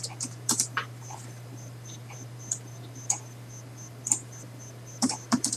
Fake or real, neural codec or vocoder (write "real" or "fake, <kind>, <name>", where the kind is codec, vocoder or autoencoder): fake, vocoder, BigVGAN v2